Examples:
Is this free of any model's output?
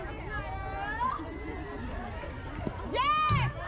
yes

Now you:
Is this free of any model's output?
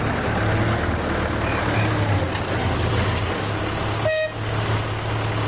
yes